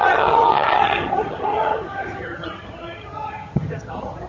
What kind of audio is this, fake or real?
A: fake